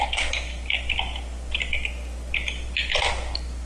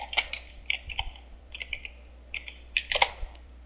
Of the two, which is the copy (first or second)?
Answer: second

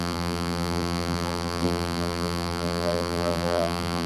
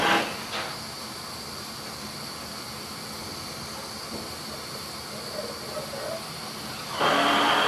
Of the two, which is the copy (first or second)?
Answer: first